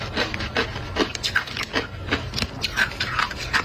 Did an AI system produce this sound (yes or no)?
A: no